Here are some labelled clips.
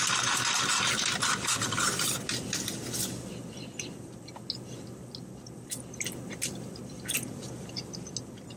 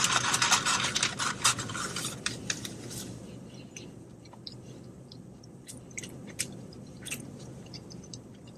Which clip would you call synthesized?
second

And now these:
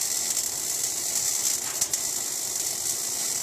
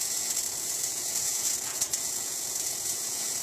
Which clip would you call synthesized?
second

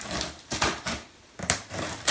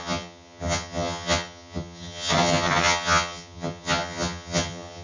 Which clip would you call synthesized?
second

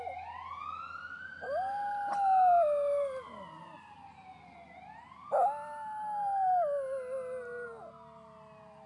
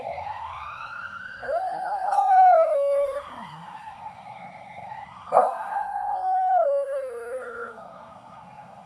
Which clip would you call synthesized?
second